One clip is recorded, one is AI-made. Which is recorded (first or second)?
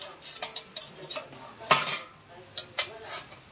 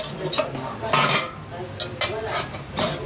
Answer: second